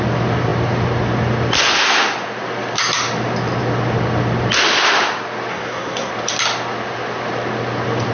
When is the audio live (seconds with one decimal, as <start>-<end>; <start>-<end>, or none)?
0.0-5.5; 6.1-8.1